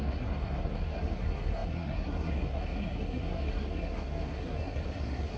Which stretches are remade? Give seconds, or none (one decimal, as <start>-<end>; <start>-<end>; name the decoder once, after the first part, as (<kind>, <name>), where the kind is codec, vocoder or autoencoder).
0.0-5.4 (codec, SNAC)